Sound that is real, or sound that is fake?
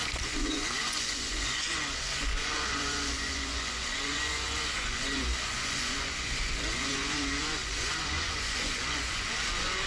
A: fake